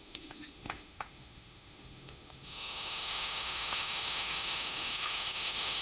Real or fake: fake